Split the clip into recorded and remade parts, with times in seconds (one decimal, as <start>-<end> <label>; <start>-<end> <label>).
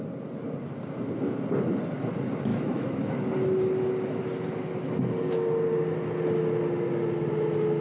0.0-2.5 recorded; 2.5-3.1 remade; 3.1-7.8 recorded